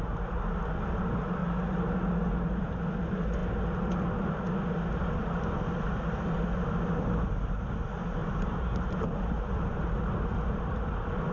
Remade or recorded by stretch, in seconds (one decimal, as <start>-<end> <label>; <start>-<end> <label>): 0.0-8.2 recorded; 8.2-8.9 remade; 8.9-11.3 recorded